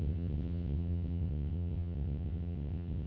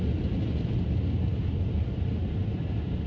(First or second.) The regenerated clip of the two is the first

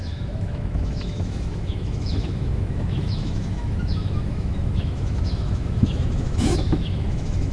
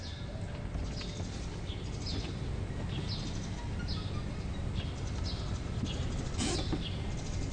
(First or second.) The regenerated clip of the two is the first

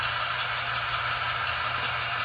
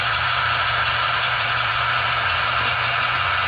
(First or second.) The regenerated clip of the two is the second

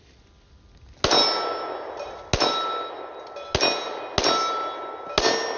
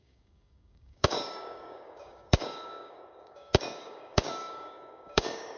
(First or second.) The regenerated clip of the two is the second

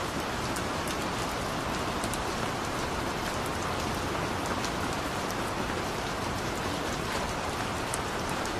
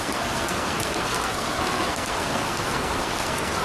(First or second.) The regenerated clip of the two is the second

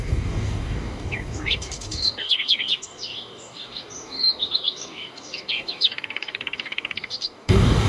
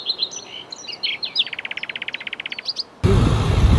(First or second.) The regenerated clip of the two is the first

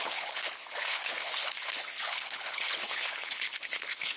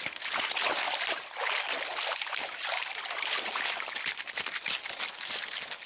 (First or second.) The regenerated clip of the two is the first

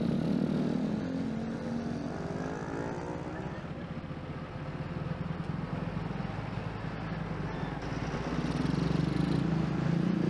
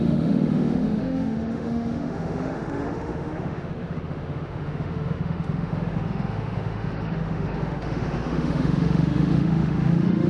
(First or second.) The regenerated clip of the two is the second